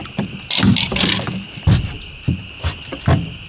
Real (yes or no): no